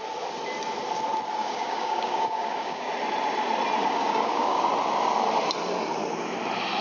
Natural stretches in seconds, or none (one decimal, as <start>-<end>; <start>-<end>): 0.0-1.4; 2.9-3.8; 4.6-6.8